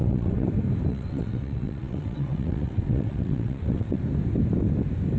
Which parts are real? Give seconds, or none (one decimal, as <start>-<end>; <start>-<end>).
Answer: 0.5-0.9; 4.0-5.2